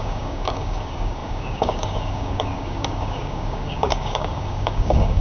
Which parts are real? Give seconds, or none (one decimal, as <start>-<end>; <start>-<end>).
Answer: none